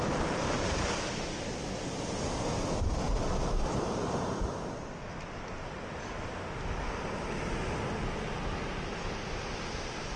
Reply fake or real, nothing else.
real